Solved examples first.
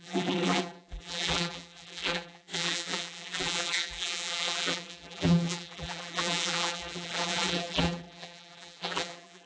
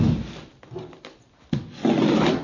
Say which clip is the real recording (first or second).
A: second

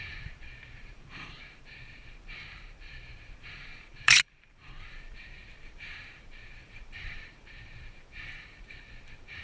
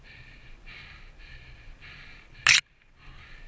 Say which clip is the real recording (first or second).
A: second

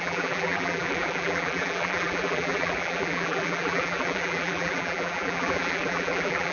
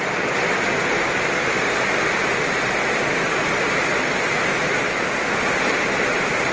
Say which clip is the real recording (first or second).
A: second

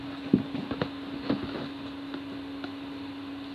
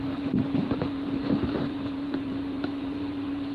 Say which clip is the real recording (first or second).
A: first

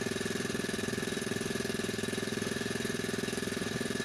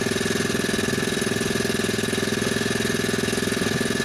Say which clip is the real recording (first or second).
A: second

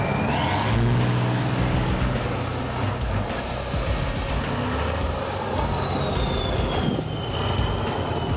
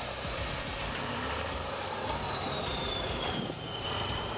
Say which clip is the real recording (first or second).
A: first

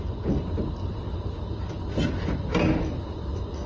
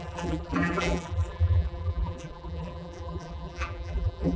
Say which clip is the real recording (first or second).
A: first